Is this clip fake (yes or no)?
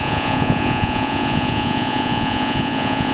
yes